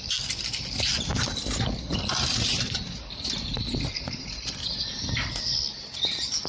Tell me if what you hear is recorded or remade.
recorded